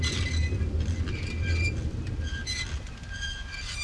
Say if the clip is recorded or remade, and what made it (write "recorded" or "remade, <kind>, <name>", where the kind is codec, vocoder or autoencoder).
remade, vocoder, BigVGAN v2